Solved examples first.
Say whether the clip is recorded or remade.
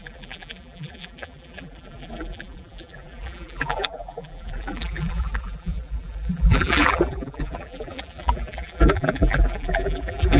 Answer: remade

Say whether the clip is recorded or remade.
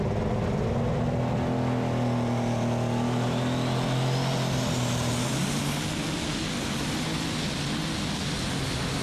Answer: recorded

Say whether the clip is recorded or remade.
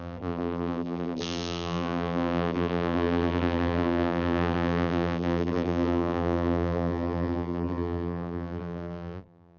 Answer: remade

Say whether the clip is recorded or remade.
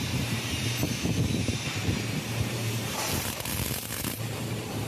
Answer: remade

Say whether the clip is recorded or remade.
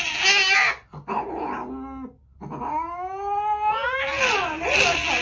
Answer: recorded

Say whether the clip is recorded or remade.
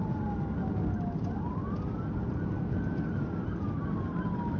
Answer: recorded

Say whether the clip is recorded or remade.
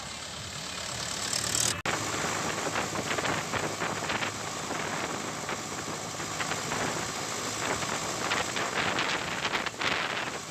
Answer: recorded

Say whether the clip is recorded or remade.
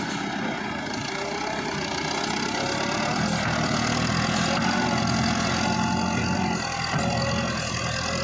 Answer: recorded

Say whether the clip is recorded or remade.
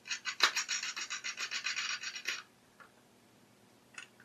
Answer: recorded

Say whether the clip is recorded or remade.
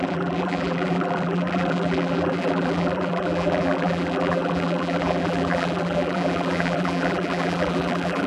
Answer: remade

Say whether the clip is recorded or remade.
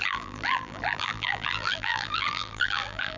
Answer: remade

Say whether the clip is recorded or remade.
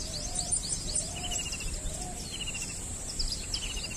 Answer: recorded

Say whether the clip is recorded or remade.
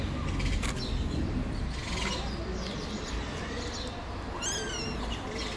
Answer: recorded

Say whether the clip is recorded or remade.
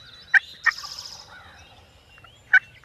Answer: recorded